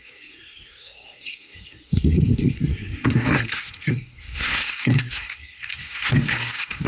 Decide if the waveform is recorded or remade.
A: remade